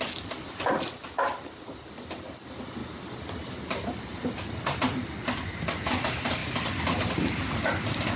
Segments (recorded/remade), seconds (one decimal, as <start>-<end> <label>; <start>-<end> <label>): 0.0-8.2 recorded